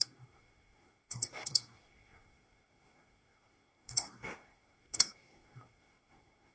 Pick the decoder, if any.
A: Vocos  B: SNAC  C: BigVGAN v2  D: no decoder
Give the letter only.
B